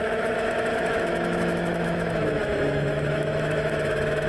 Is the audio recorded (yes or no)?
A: no